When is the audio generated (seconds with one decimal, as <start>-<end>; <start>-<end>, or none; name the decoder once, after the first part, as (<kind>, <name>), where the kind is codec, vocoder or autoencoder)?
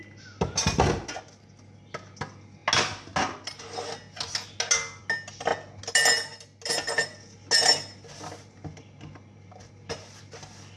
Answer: none